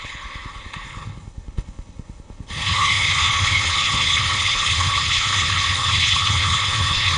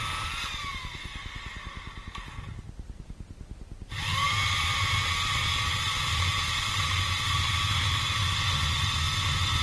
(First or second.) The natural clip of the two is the second